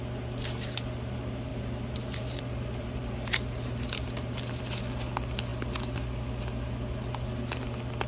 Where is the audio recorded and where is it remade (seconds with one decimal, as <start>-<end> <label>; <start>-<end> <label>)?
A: 0.0-1.5 recorded; 1.5-4.6 remade; 4.6-8.1 recorded